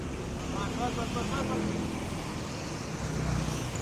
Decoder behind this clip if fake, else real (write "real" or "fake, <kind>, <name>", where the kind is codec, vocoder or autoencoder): real